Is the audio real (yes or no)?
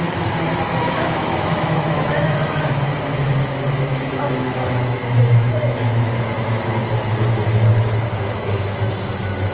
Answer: no